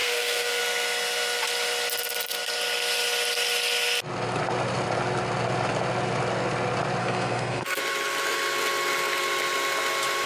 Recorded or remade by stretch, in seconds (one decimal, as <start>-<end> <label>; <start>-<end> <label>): 0.0-0.6 remade; 0.6-7.0 recorded; 7.0-7.8 remade; 7.8-10.3 recorded